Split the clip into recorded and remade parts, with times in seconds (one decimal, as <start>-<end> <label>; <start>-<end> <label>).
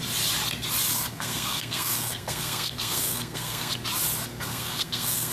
0.0-0.9 recorded; 0.9-3.7 remade; 3.7-4.3 recorded; 4.3-5.3 remade